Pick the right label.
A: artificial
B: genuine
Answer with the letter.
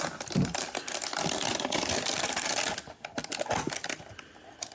B